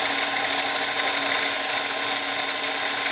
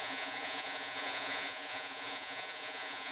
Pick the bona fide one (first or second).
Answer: first